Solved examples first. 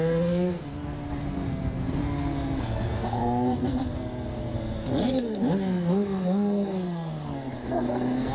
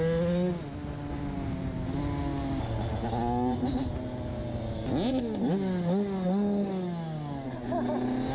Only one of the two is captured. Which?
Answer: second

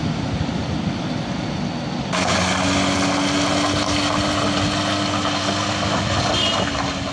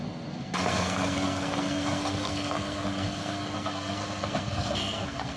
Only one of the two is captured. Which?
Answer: first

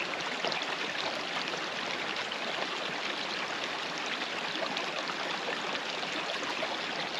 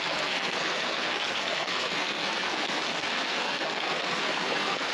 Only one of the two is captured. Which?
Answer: first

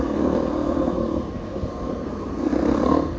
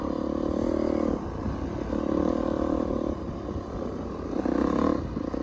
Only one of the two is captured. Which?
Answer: second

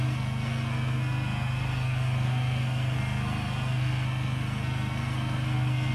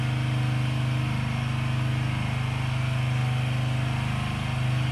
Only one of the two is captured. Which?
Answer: second